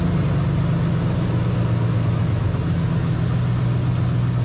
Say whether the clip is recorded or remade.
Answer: recorded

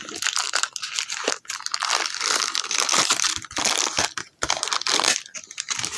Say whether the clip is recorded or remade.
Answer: recorded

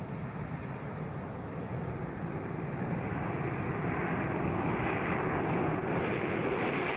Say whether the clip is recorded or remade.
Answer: recorded